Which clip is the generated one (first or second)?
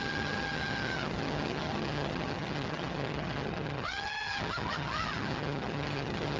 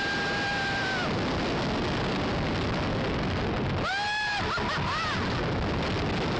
first